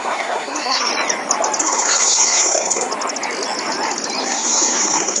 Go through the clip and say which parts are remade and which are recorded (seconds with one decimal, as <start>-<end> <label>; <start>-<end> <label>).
0.0-0.9 remade; 0.9-1.6 recorded; 1.6-2.9 remade; 2.9-4.2 recorded; 4.2-5.2 remade